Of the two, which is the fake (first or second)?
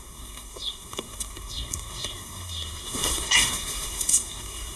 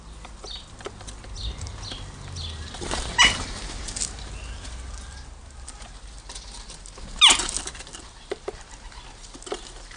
first